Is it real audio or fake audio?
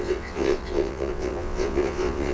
fake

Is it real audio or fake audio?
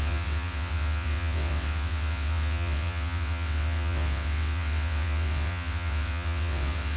fake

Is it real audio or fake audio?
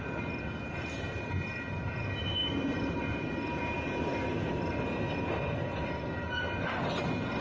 real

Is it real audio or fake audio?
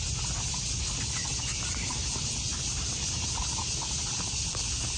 real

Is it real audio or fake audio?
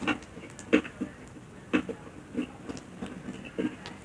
real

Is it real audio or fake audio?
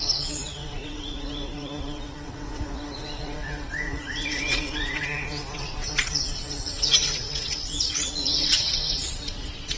fake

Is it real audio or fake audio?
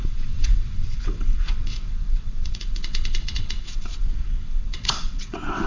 fake